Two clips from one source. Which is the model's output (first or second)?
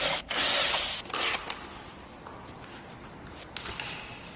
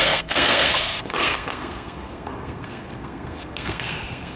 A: second